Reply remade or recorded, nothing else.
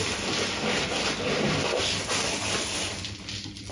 recorded